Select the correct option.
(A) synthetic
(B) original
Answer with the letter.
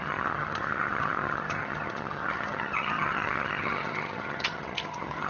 A